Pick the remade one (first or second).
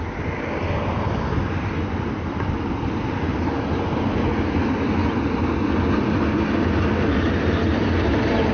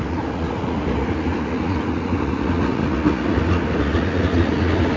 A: second